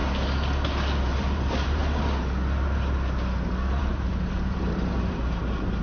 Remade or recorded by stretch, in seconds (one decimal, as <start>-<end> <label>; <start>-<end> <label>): 0.0-1.0 recorded; 1.0-1.8 remade; 1.8-3.8 recorded; 3.8-5.8 remade